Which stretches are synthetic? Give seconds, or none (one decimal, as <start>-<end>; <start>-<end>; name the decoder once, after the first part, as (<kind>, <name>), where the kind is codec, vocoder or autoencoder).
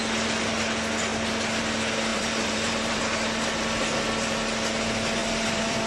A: 2.1-3.0 (vocoder, BigVGAN v2); 5.2-5.9